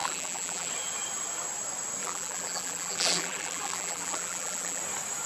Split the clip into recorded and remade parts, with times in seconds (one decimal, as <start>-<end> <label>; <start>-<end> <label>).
0.0-0.7 remade; 0.7-2.0 recorded; 2.0-4.8 remade; 4.8-5.3 recorded